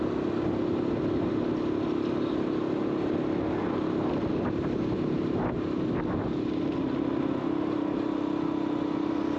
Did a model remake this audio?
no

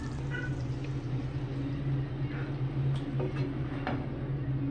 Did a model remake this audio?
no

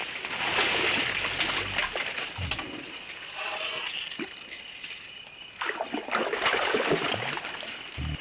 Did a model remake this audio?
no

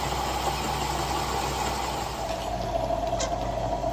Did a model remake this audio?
no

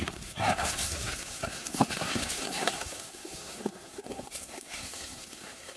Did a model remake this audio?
yes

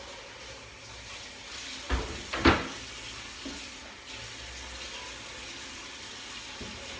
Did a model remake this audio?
no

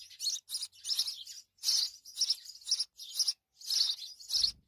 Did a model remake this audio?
no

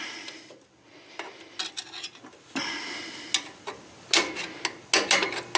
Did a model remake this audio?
no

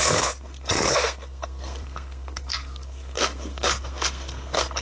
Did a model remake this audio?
yes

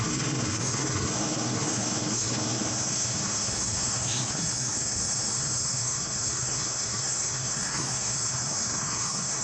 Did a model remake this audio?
yes